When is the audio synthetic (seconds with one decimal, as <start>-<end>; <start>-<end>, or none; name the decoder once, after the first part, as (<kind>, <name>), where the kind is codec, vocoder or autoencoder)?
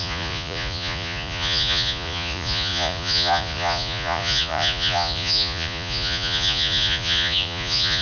0.0-8.0 (vocoder, Vocos)